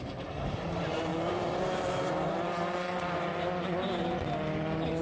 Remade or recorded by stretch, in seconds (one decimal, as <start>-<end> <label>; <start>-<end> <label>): 0.0-3.3 remade; 3.3-5.0 recorded